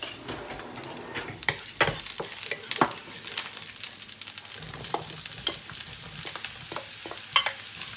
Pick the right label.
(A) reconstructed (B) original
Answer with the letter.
B